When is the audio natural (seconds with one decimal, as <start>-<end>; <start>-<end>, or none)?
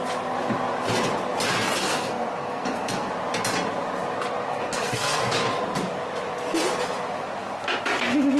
0.0-1.8; 3.1-4.5; 5.2-8.4